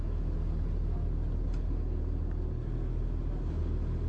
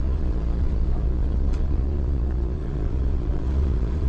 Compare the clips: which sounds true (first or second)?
first